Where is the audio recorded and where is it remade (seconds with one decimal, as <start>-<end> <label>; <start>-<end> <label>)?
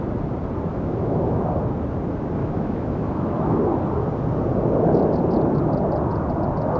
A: 0.0-0.7 recorded; 0.7-1.4 remade; 1.4-2.4 recorded; 2.4-3.6 remade; 3.6-6.8 recorded